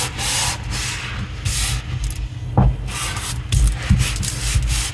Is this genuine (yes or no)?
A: yes